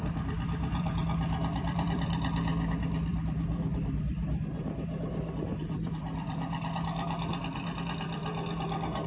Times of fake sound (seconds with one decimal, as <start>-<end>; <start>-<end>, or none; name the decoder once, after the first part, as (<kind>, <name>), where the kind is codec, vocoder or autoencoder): 0.0-2.5 (vocoder, BigVGAN v2); 3.1-4.5; 5.4-8.2